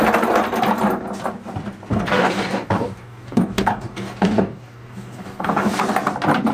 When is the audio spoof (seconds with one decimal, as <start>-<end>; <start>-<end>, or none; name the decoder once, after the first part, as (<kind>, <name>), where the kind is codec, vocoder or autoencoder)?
1.9-5.8 (codec, DAC)